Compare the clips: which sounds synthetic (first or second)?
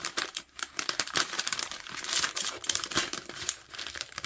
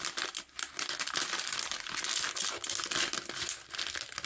first